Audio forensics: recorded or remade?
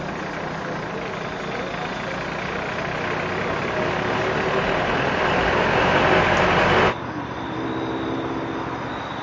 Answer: recorded